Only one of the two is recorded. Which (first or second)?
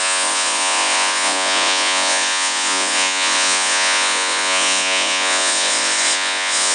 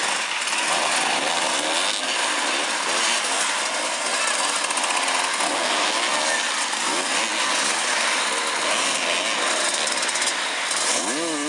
second